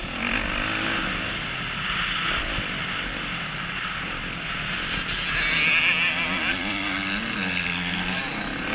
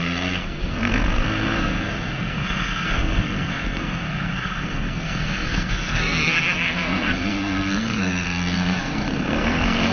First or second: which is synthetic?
second